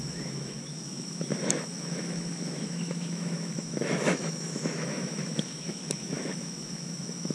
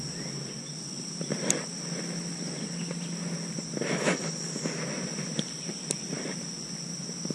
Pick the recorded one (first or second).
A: second